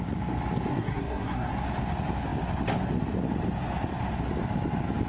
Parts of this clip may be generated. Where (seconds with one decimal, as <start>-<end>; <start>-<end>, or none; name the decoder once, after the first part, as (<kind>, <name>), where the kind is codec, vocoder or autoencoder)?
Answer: 0.7-1.5 (codec, SNAC)